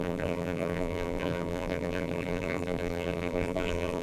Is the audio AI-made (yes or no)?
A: yes